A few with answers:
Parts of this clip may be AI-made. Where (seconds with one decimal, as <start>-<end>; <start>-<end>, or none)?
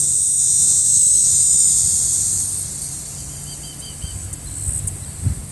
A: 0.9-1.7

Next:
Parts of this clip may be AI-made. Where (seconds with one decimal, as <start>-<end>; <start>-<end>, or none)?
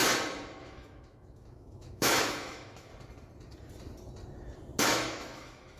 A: 0.6-2.9; 4.8-5.8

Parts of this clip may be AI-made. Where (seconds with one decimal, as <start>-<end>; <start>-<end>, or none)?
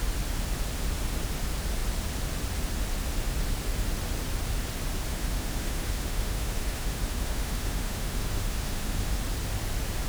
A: 5.1-9.2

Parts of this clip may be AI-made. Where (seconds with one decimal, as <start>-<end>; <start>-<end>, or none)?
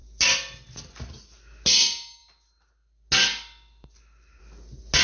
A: none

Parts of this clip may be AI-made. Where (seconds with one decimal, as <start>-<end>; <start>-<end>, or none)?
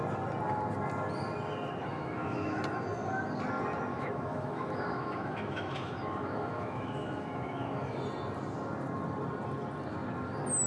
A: 1.9-2.6; 3.9-8.0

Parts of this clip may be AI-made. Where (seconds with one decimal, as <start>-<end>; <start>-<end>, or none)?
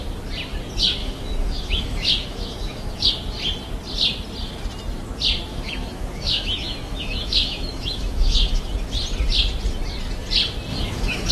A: 1.0-3.1; 5.5-8.7; 10.7-11.3